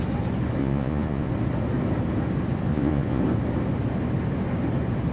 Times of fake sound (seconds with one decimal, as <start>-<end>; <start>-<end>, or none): 0.6-1.3; 2.7-3.2